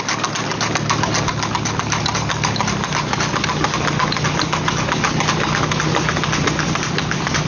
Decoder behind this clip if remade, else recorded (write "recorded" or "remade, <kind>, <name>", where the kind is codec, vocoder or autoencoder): recorded